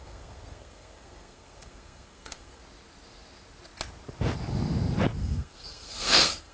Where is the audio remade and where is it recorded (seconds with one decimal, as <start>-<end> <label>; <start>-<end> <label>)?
0.0-2.6 remade; 2.6-5.2 recorded; 5.2-6.5 remade